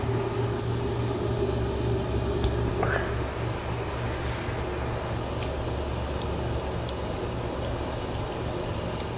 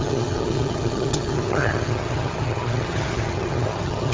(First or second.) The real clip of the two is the first